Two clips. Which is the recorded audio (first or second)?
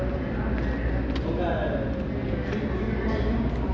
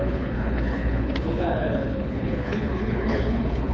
first